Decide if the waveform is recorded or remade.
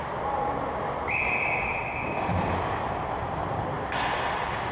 recorded